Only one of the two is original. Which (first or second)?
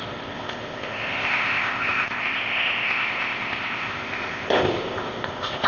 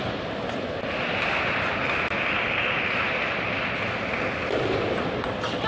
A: second